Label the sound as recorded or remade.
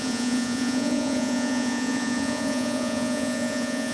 remade